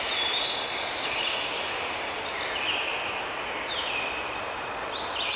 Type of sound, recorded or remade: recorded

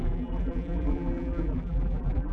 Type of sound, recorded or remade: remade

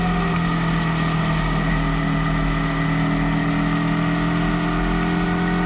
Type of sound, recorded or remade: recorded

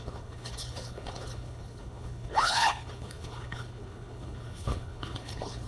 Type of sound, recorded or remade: remade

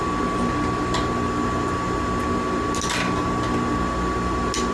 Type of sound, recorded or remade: recorded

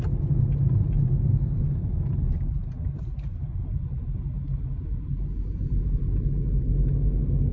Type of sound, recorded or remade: recorded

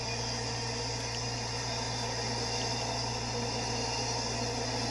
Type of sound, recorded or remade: recorded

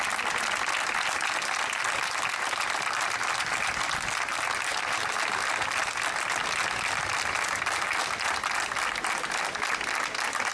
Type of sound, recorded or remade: recorded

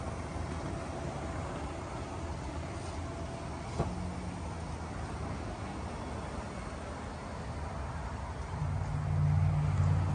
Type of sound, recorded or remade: recorded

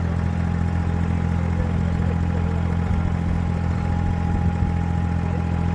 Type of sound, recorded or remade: recorded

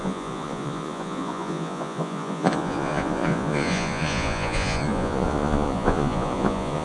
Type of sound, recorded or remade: remade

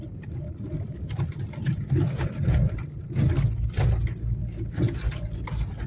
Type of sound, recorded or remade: recorded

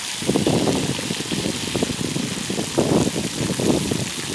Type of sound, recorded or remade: recorded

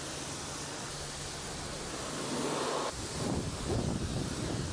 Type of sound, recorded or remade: remade